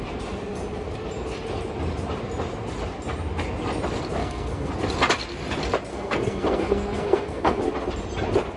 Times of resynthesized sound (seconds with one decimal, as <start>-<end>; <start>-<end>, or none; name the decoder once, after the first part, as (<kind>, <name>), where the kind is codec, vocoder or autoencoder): 4.2-4.7 (codec, SNAC); 5.9-7.6